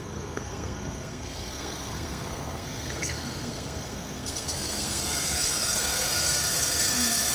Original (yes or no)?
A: no